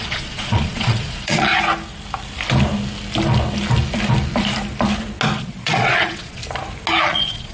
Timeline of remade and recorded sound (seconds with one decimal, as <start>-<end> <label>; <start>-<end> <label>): 0.0-1.5 remade; 1.5-5.4 recorded; 5.4-6.4 remade; 6.4-7.0 recorded; 7.0-7.5 remade